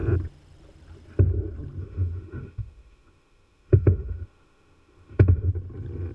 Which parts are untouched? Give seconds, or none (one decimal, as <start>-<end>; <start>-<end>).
0.0-1.8; 5.5-6.1

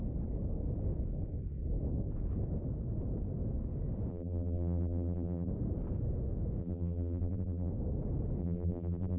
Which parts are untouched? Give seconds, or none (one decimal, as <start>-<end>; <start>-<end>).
0.0-4.1; 5.5-6.6; 7.7-8.4

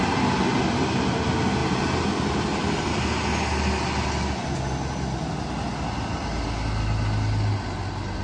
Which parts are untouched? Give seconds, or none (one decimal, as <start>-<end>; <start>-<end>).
0.0-8.2

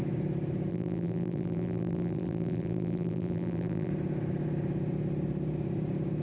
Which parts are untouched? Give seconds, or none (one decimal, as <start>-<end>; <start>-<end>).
0.0-0.7; 3.9-6.2

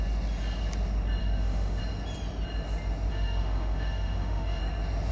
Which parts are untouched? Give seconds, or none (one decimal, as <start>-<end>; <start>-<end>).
0.0-1.2; 1.8-3.1; 4.6-5.1

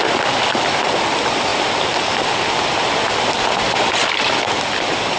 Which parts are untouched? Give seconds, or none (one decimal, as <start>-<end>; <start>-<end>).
0.0-5.2